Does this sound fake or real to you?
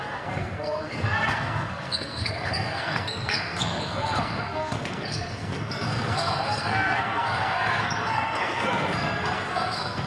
fake